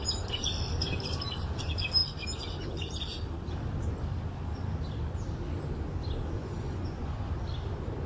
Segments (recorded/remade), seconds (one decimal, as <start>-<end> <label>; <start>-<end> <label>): 0.0-6.4 recorded; 6.4-7.3 remade; 7.3-8.1 recorded